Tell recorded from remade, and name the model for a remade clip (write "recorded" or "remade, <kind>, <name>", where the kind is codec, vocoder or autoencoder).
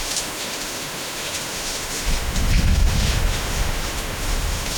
remade, autoencoder, DAC-VAE